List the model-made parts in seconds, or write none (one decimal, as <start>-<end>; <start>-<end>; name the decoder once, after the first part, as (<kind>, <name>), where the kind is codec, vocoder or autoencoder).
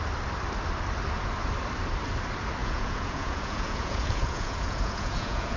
2.6-5.6 (vocoder, Vocos)